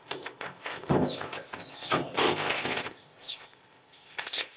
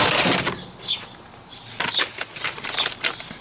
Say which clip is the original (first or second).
second